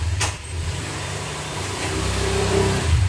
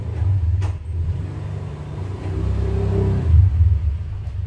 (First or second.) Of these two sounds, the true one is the second